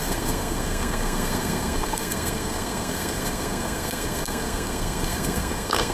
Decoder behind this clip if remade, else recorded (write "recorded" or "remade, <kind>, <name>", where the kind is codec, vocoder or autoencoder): remade, codec, SNAC